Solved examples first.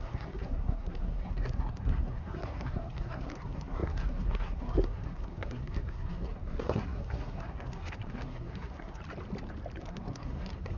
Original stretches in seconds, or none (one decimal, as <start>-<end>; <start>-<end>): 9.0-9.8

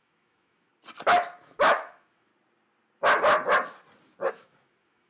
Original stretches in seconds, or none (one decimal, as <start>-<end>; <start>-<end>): 0.7-1.4; 2.3-4.3

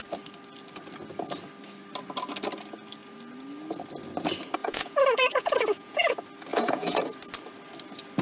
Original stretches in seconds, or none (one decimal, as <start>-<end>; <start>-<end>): 0.0-4.6; 6.1-6.5; 7.0-8.2

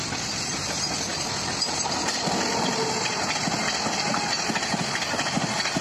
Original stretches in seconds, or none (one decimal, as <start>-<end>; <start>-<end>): 0.0-5.8

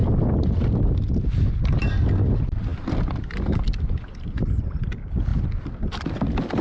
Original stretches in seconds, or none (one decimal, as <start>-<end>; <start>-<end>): 0.0-6.6

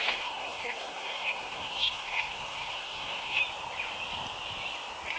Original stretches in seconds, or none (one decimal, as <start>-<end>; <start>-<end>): 3.4-5.2